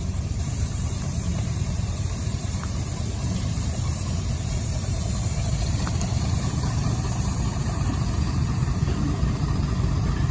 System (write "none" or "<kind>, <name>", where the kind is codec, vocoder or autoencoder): vocoder, BigVGAN v2